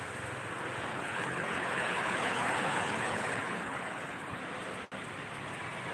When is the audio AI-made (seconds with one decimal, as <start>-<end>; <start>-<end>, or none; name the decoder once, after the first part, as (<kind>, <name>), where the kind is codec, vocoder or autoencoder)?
0.9-4.4 (codec, HILCodec)